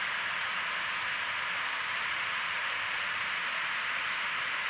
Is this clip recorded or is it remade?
remade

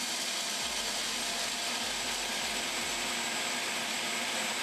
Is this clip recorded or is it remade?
recorded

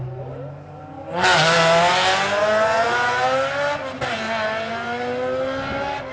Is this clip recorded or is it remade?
recorded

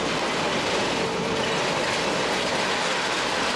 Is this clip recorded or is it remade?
remade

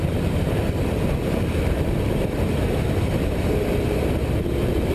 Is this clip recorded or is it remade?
remade